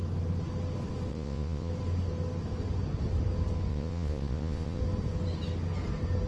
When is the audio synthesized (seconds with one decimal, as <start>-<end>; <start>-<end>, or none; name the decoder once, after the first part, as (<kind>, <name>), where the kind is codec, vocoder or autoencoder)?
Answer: 1.1-1.7 (vocoder, Vocos); 3.7-4.8